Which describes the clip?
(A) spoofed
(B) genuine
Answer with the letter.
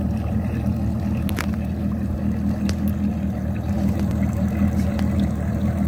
B